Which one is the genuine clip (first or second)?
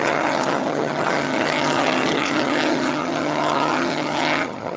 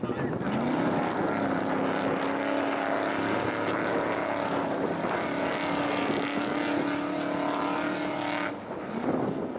second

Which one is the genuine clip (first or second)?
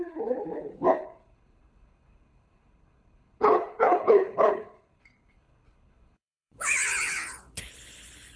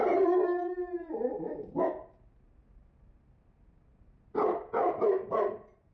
second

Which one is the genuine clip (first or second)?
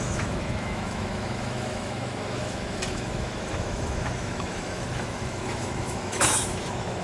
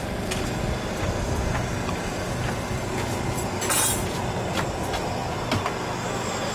second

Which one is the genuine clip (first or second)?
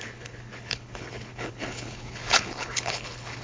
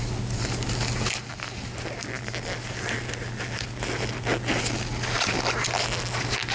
second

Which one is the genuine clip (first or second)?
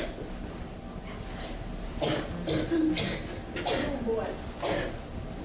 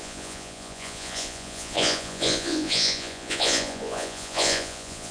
first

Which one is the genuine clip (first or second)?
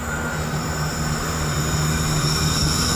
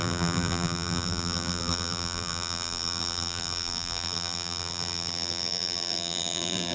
first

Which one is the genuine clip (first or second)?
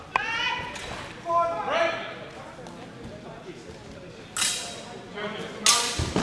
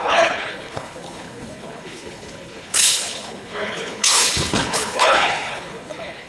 first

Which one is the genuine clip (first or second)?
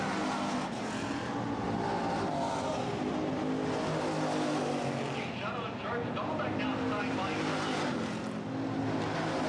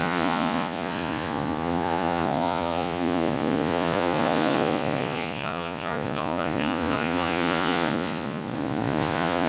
first